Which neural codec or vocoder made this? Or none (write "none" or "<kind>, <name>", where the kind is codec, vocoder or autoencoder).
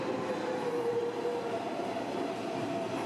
none